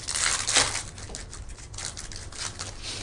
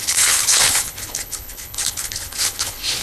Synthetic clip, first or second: second